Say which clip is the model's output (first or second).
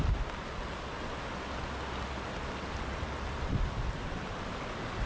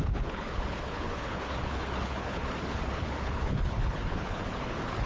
second